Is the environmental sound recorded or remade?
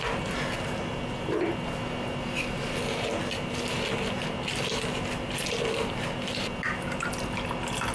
recorded